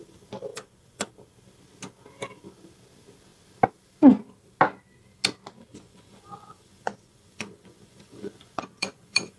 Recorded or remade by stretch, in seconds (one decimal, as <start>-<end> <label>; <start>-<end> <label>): 0.0-0.5 recorded; 0.5-1.1 remade; 1.1-5.7 recorded; 5.7-9.4 remade